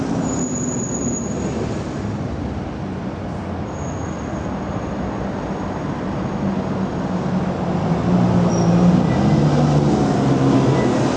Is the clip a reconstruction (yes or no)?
no